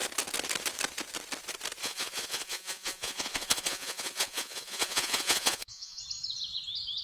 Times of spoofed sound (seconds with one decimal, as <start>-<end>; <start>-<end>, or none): 1.8-6.0